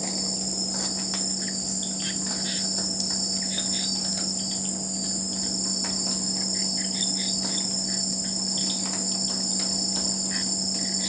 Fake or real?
real